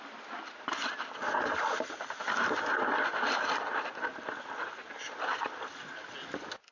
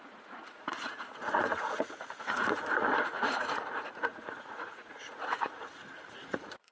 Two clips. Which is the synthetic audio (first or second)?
second